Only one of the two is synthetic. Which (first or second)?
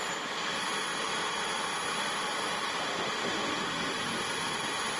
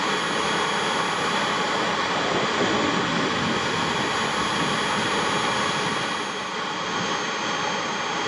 first